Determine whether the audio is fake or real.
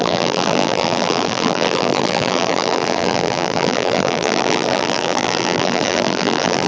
fake